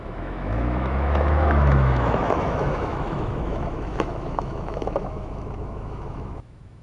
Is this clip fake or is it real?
fake